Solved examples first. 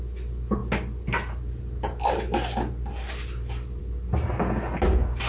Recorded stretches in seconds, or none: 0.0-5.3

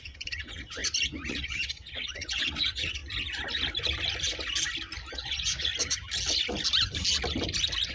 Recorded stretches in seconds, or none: 0.8-1.3; 3.0-5.1; 5.7-7.9

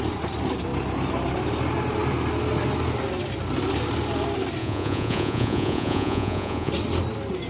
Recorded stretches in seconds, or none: 0.0-4.6; 6.7-7.5